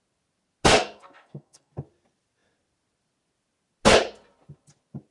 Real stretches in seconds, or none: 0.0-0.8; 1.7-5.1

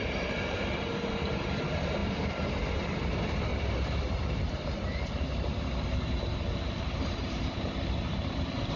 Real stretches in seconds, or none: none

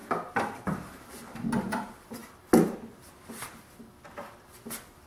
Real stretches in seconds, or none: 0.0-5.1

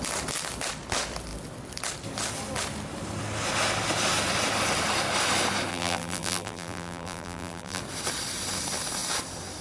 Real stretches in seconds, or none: 0.0-5.7; 7.8-9.6

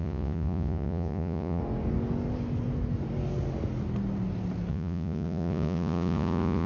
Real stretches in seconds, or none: 1.6-4.7